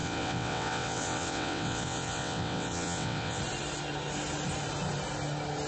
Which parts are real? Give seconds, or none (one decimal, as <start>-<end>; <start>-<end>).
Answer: 3.4-5.7